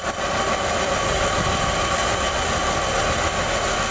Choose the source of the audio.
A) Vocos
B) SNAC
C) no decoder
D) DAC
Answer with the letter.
C